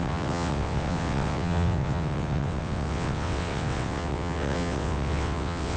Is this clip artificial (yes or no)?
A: yes